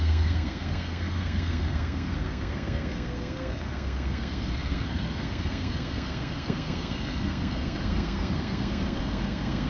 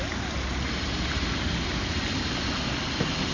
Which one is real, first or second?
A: second